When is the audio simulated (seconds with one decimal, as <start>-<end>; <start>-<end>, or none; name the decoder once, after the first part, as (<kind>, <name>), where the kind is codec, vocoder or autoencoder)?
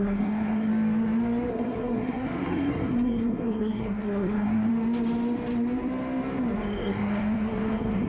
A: 0.0-0.7 (codec, SNAC); 1.5-4.7; 6.8-8.1